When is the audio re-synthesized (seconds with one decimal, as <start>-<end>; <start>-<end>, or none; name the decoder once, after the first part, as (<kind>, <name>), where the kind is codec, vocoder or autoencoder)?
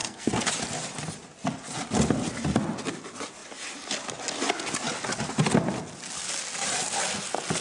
0.0-0.5 (codec, SNAC)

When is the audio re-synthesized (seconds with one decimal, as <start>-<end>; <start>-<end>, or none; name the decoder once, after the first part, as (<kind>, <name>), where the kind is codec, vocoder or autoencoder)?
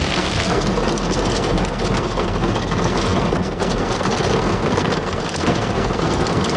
0.0-6.6 (codec, SNAC)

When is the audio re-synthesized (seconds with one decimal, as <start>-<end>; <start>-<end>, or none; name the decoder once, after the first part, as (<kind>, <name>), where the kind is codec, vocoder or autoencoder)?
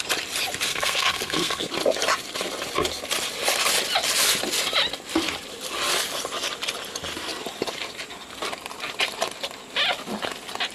0.7-1.7 (codec, SNAC)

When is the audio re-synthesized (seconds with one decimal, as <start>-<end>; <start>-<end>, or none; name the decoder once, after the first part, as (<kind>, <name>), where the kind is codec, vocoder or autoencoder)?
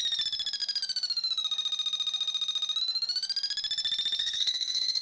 4.2-5.0 (codec, SNAC)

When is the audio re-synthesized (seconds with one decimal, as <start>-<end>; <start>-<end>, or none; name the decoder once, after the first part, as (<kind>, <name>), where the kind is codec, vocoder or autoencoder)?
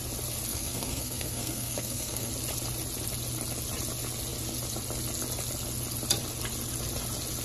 0.5-2.3 (codec, SNAC)